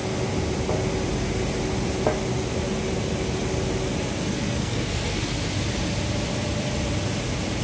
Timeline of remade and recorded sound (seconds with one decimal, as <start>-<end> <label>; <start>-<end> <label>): 0.0-4.3 recorded; 4.3-5.4 remade; 5.4-7.6 recorded